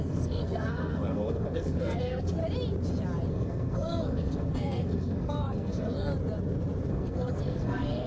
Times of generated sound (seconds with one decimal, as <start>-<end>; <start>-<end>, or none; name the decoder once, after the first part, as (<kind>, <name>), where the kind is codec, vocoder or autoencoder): 0.0-2.4 (codec, SNAC); 3.3-6.1; 6.9-8.1